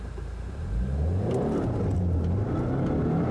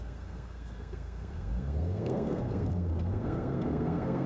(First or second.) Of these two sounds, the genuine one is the first